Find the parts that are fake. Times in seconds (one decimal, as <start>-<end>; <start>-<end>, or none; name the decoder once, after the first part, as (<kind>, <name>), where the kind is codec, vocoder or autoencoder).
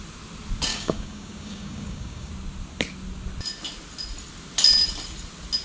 0.7-2.3 (codec, DAC)